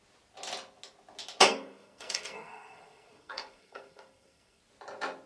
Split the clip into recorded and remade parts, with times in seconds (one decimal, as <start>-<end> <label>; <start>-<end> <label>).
0.0-1.4 recorded; 1.4-4.6 remade; 4.6-5.3 recorded